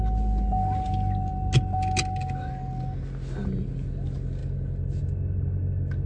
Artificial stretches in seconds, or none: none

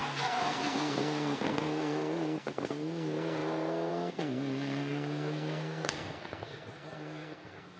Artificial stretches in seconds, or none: 0.0-7.8 (codec, SNAC)

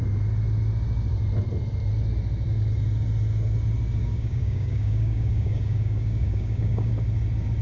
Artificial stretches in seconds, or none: 4.0-6.9 (codec, DAC)